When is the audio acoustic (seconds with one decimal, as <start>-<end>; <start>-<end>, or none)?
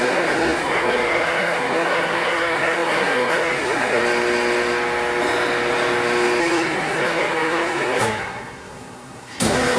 4.0-6.4